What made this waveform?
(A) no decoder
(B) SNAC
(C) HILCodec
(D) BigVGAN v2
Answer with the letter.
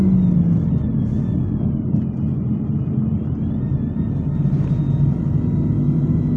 A